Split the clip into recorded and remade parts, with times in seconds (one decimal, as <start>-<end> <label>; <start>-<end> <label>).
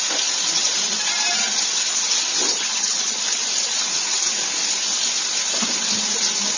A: 0.0-2.5 recorded; 2.5-3.2 remade; 3.2-6.6 recorded